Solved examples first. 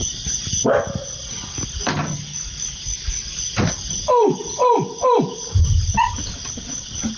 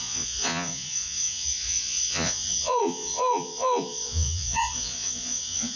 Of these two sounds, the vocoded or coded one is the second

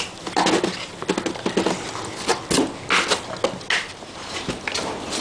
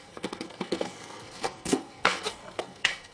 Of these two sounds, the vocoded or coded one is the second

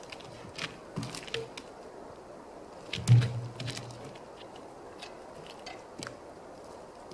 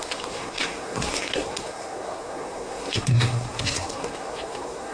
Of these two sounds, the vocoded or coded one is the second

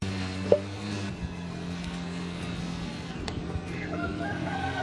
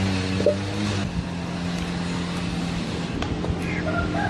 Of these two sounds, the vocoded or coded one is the first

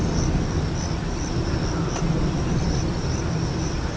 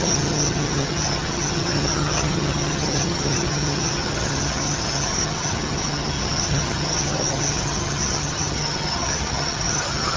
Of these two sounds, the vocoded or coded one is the second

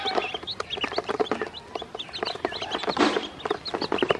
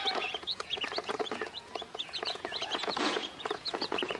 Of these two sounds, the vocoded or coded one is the second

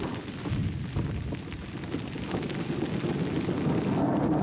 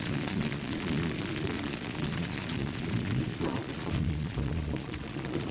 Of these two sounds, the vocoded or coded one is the second